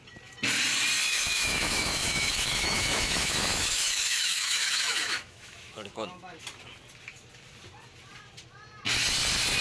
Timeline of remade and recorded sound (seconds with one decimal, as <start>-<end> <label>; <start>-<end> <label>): 0.0-1.1 recorded; 1.1-6.4 remade; 6.4-9.6 recorded